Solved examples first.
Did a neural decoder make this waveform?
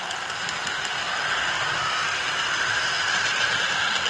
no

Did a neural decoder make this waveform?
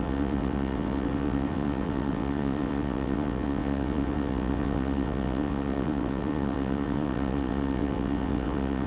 yes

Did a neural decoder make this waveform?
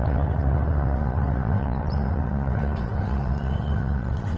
yes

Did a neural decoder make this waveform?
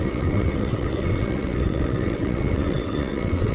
yes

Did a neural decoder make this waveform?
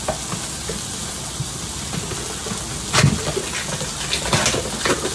no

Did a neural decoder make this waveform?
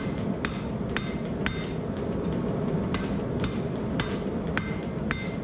no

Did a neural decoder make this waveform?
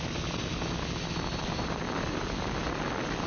no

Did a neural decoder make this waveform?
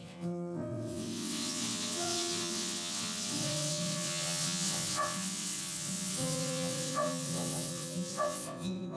yes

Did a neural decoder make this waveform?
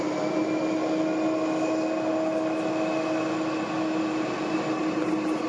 no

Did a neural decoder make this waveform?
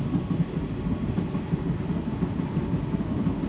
no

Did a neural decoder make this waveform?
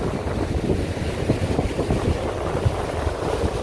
no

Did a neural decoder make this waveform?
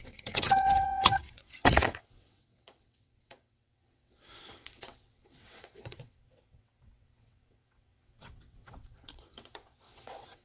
yes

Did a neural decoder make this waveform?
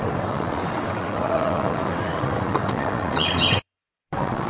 yes